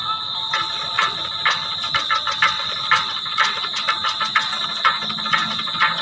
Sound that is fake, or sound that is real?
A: real